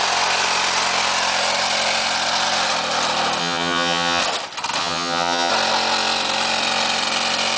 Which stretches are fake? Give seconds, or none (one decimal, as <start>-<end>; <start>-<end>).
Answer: 3.4-4.2; 4.8-5.5